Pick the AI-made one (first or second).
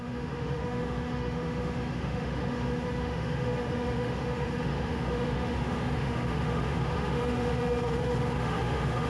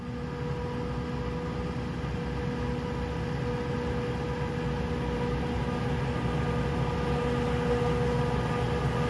first